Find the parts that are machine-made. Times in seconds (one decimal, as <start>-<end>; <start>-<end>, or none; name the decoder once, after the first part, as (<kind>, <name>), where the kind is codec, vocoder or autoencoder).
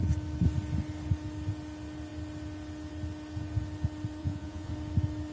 4.2-4.7 (vocoder, Vocos)